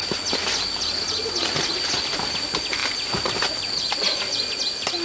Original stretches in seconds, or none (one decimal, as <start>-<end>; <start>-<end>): 0.0-5.0